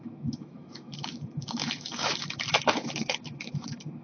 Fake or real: fake